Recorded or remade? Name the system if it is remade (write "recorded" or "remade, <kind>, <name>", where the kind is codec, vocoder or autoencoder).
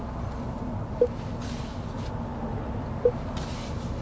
recorded